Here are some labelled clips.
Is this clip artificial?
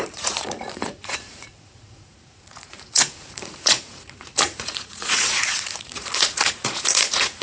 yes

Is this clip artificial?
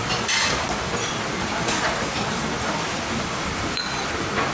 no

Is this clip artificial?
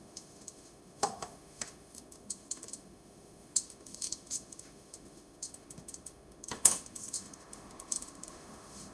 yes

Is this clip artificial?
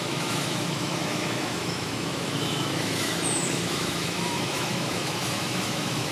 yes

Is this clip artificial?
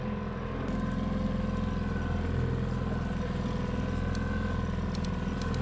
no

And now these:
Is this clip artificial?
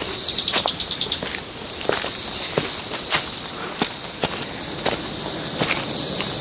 no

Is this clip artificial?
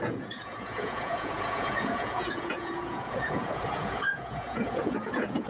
yes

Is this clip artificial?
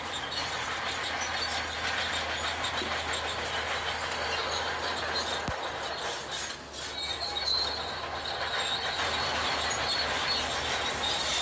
no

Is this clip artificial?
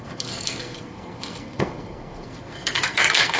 yes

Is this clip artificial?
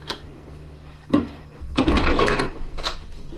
yes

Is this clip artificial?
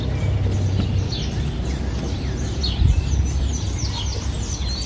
no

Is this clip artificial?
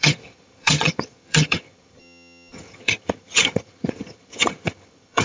yes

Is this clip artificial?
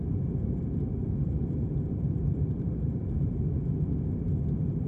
no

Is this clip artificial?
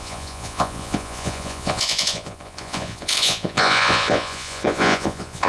yes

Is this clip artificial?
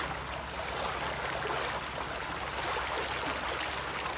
no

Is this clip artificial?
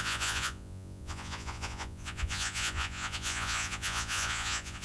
yes